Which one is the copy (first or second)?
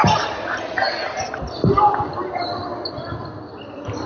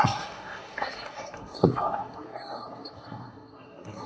second